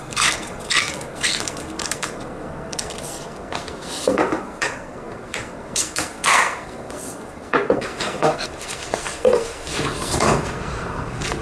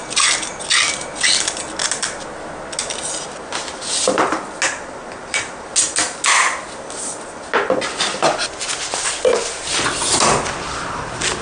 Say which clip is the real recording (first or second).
second